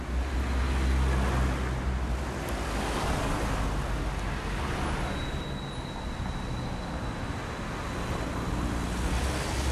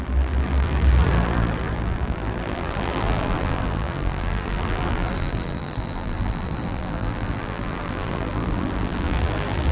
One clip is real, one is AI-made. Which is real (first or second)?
first